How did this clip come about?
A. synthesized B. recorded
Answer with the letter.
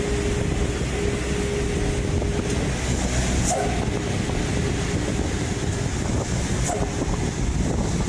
B